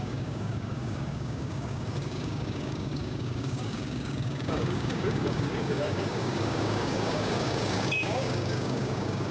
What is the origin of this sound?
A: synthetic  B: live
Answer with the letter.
A